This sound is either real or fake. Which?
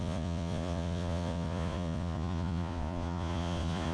fake